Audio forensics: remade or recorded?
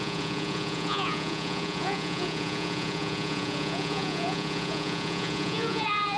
remade